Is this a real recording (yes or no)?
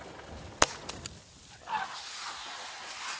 yes